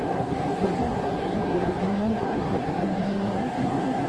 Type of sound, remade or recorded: remade